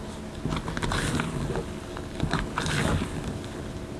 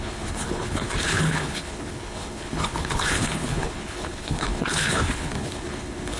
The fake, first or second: second